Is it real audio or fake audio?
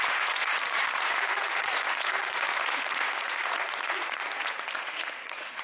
fake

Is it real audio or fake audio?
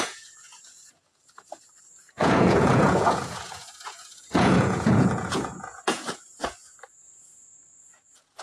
fake